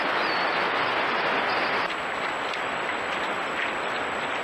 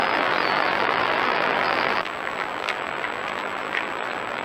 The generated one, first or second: second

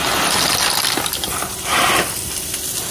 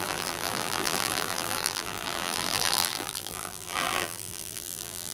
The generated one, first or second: second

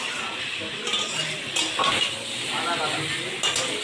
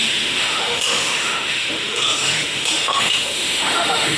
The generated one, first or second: second